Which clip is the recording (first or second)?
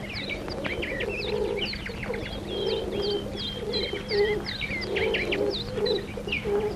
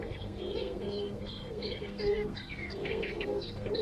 first